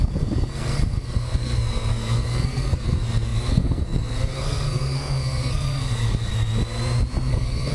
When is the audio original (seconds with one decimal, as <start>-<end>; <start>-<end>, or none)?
6.3-7.3